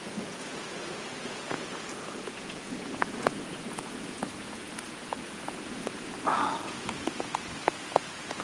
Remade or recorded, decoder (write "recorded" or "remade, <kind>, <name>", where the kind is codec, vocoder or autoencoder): remade, vocoder, Vocos